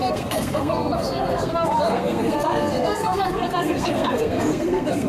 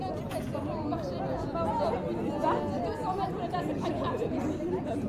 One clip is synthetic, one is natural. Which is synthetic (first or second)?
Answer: first